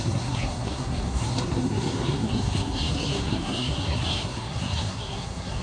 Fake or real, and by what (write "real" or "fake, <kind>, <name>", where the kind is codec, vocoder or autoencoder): fake, codec, SNAC